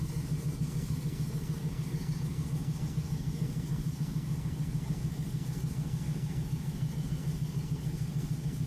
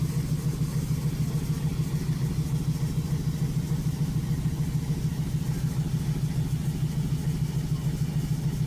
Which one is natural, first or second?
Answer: second